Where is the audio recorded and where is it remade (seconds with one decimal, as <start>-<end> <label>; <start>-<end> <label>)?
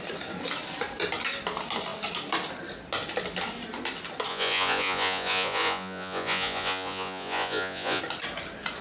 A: 0.0-4.3 recorded; 4.3-8.0 remade; 8.0-8.8 recorded